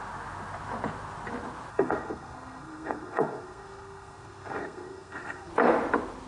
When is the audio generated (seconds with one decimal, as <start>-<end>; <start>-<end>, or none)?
1.7-5.5